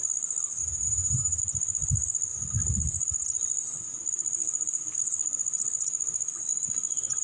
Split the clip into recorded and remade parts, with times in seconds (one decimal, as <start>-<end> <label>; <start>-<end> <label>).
0.0-0.6 recorded; 0.6-1.4 remade; 1.4-7.2 recorded